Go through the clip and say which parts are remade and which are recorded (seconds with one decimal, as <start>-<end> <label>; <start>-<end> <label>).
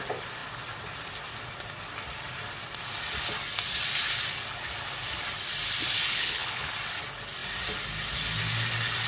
0.0-6.1 recorded; 6.1-6.7 remade; 6.7-9.1 recorded